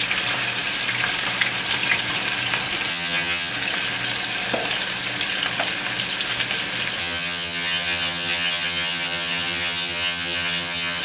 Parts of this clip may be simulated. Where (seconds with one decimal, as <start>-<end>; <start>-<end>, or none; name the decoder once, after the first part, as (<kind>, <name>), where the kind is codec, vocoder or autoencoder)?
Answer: 2.9-3.5 (vocoder, HiFi-GAN); 7.0-11.0